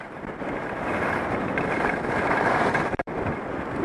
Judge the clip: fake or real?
fake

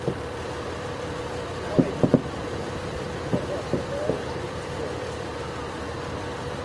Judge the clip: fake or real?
fake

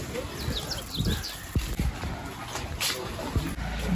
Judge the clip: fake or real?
real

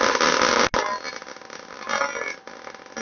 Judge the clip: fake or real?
real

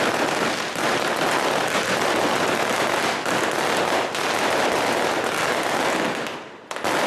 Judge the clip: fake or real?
real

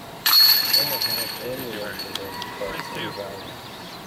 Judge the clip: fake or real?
fake